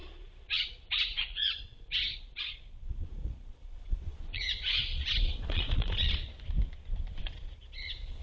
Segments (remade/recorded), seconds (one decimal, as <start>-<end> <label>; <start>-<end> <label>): 0.0-6.2 remade; 6.2-7.2 recorded; 7.2-8.2 remade